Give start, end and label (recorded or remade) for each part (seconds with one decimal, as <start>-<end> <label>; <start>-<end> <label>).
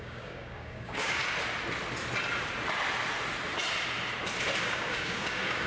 0.0-1.2 remade; 1.2-4.6 recorded; 4.6-5.7 remade